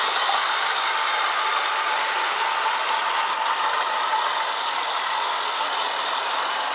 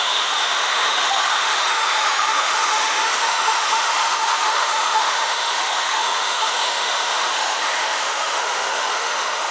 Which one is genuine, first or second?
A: first